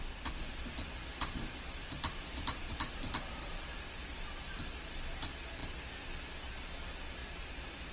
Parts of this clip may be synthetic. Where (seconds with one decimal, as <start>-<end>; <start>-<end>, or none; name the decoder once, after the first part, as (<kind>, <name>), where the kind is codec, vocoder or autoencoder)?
1.0-4.6 (vocoder, BigVGAN v2); 7.2-7.9